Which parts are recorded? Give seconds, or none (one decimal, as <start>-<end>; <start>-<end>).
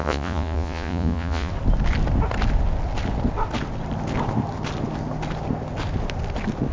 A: 1.5-6.7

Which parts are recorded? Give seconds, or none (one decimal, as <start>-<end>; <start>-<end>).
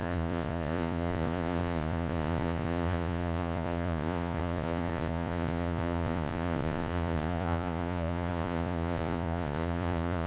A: none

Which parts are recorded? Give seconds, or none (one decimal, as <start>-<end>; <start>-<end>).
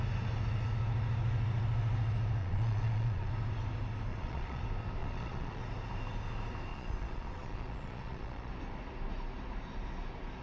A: 0.0-2.4; 3.3-4.1; 4.6-5.0; 5.6-6.7; 8.5-10.4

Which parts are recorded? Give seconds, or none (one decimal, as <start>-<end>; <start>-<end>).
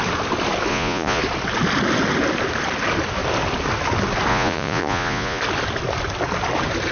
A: 0.0-0.7; 1.2-4.3; 5.4-6.9